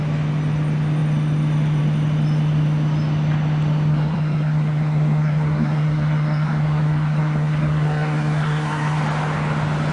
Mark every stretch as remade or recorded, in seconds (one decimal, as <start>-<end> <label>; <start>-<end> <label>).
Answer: 0.0-3.9 recorded; 3.9-9.0 remade; 9.0-9.9 recorded